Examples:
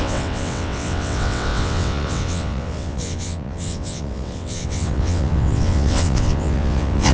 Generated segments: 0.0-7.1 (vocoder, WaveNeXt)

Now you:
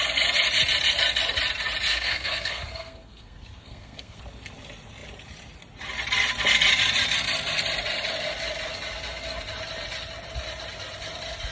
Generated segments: 1.9-4.2 (codec, SNAC)

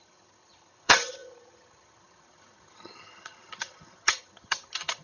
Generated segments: 0.0-5.0 (vocoder, HiFi-GAN)

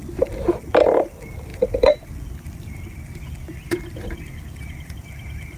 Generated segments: 1.5-4.9 (vocoder, BigVGAN v2)

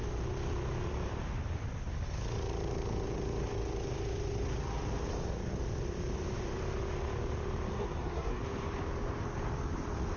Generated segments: 7.7-8.4 (codec, SNAC)

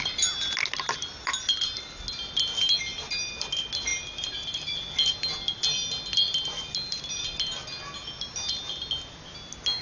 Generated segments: none

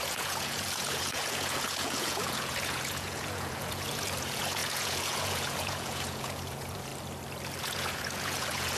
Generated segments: 0.0-6.9 (vocoder, Vocos); 7.6-8.8